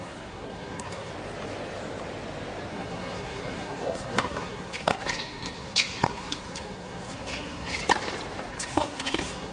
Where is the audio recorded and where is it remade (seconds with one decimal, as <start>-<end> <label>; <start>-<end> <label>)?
0.0-1.1 remade; 1.1-2.7 recorded; 2.7-7.8 remade; 7.8-8.5 recorded; 8.5-9.5 remade